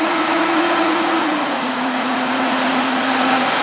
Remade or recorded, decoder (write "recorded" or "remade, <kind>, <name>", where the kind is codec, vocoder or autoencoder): remade, vocoder, Vocos